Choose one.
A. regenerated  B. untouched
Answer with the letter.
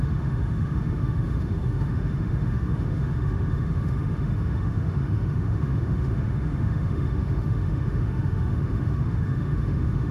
A